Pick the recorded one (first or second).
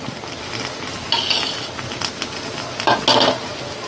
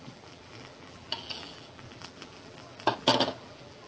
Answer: first